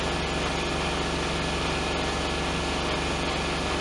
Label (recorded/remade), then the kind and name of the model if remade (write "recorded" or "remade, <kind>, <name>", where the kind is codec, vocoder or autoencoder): recorded